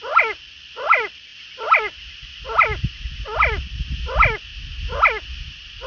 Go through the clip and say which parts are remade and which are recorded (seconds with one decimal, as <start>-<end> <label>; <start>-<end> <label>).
0.0-5.9 recorded